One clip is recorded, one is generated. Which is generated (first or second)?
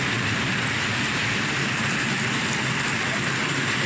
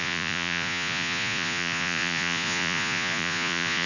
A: second